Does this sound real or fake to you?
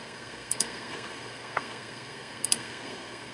fake